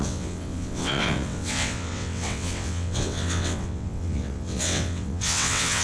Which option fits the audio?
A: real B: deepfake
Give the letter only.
B